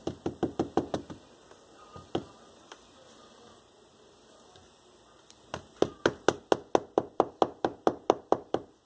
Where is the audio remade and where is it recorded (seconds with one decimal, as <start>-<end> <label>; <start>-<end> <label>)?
0.0-8.9 recorded